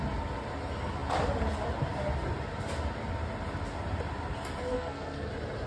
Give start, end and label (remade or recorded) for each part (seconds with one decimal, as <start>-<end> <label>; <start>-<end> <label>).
0.0-4.7 recorded; 4.7-5.3 remade; 5.3-5.7 recorded